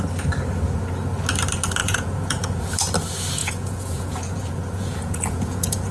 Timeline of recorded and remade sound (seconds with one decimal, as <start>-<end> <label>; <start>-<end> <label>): 0.0-1.8 recorded; 1.8-2.7 remade; 2.7-3.4 recorded; 3.4-5.9 remade